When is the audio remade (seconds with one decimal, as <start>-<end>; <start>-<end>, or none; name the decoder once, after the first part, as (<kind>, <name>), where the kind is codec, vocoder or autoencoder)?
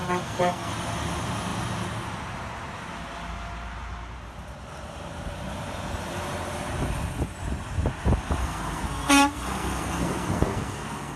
0.0-0.7 (codec, SNAC); 8.4-11.2